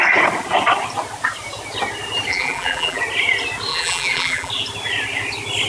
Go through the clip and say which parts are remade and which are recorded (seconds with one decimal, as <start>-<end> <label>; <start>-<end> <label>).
0.0-2.3 recorded; 2.3-3.0 remade; 3.0-3.7 recorded; 3.7-4.5 remade; 4.5-5.7 recorded